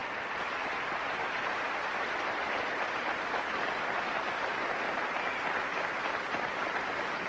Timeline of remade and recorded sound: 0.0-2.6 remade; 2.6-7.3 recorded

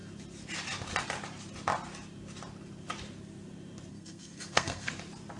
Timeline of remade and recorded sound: 0.0-3.9 recorded; 3.9-4.9 remade; 4.9-5.4 recorded

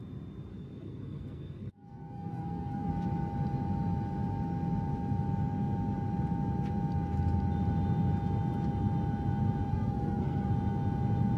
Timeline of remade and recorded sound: 0.0-0.5 recorded; 0.5-2.9 remade; 2.9-9.7 recorded; 9.7-10.5 remade; 10.5-11.4 recorded

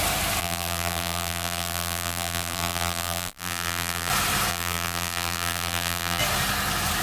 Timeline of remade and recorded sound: 0.0-0.4 recorded; 0.4-4.1 remade; 4.1-4.5 recorded; 4.5-6.2 remade; 6.2-7.0 recorded

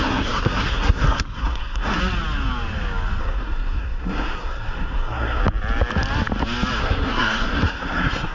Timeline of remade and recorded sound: 0.0-2.0 remade; 2.0-3.2 recorded; 3.2-5.4 remade; 5.4-6.8 recorded; 6.8-8.3 remade

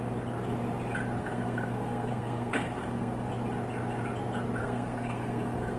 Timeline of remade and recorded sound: 0.0-1.2 recorded; 1.2-3.3 remade; 3.3-4.6 recorded; 4.6-5.8 remade